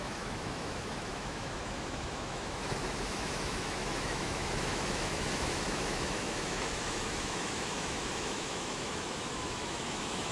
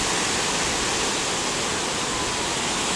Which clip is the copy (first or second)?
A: first